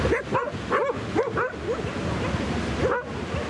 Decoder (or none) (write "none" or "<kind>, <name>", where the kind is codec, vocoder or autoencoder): none